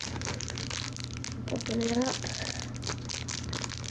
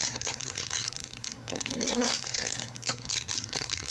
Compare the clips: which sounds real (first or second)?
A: first